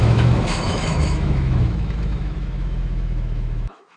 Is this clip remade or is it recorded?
remade